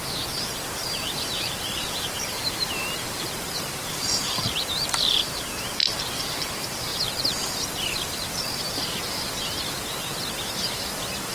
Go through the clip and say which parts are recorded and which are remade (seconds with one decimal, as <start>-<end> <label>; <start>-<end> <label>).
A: 0.0-2.6 remade; 2.6-3.9 recorded; 3.9-6.9 remade; 6.9-11.3 recorded